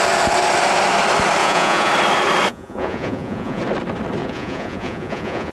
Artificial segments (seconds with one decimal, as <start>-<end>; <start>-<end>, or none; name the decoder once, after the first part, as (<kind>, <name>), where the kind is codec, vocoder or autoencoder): 1.4-1.9 (vocoder, Vocos); 2.5-3.6; 4.2-5.5